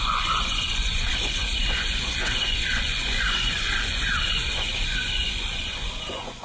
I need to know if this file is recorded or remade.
remade